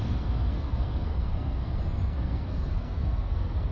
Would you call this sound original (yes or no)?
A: no